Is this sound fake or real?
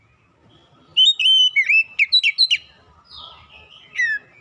real